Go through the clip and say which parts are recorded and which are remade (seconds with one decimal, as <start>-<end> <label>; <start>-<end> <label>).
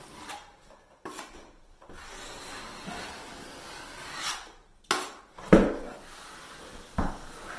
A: 0.0-0.5 recorded; 0.5-2.4 remade; 2.4-4.6 recorded; 4.6-5.3 remade; 5.3-7.6 recorded